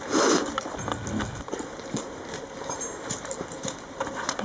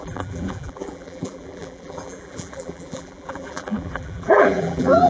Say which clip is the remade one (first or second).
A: second